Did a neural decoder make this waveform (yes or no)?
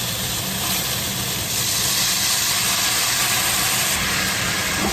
yes